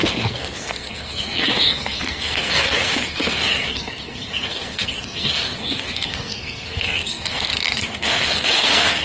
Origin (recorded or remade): remade